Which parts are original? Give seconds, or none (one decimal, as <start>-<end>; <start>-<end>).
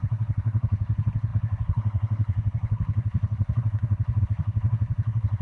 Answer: none